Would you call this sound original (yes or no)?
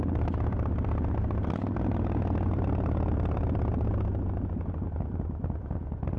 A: yes